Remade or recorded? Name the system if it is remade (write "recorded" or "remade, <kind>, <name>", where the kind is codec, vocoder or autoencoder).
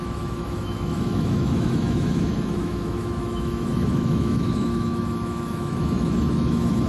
remade, autoencoder, DAC-VAE